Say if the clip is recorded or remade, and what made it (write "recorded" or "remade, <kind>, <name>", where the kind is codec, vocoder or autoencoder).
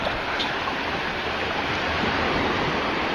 remade, vocoder, BigVGAN v2